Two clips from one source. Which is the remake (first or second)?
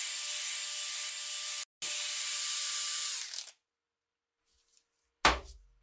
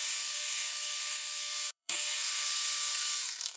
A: second